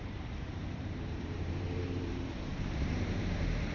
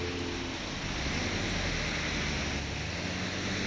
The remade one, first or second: first